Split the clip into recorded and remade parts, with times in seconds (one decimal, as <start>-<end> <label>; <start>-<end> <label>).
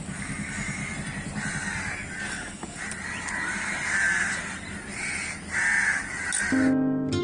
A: 0.0-0.8 remade; 0.8-2.3 recorded; 2.3-2.8 remade; 2.8-7.2 recorded